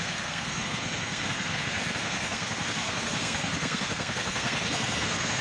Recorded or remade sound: remade